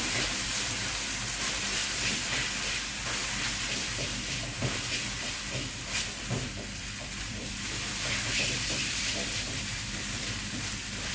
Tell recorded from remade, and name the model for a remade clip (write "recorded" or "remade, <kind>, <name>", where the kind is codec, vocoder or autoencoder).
remade, vocoder, BigVGAN v2